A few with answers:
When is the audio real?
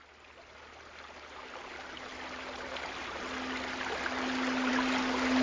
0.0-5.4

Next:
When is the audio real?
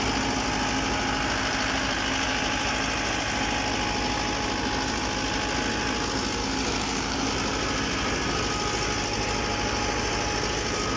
0.0-6.4; 7.3-11.0